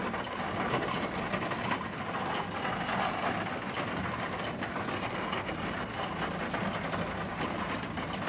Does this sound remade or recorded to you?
recorded